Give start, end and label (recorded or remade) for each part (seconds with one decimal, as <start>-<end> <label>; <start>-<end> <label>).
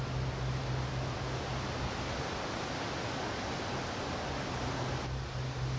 0.0-5.8 recorded